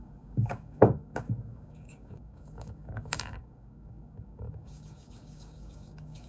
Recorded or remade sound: remade